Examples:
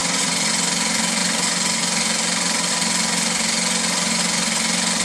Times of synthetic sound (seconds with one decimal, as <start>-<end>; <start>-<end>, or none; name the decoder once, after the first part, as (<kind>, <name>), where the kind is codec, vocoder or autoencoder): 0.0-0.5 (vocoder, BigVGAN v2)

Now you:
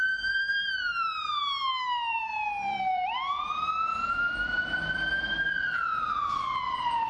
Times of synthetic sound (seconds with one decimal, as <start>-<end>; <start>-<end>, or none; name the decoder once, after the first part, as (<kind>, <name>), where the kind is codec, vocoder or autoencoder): 0.0-5.9 (vocoder, BigVGAN v2)

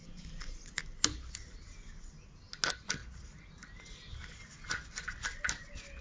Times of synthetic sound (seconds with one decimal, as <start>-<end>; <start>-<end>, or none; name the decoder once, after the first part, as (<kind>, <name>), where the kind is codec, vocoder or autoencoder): 0.0-0.8 (vocoder, BigVGAN v2)

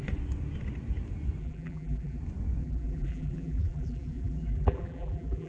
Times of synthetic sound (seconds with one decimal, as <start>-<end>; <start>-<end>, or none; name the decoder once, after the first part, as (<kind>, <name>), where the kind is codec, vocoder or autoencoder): 1.4-2.2 (vocoder, BigVGAN v2); 2.6-5.5